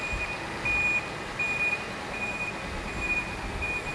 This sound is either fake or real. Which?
real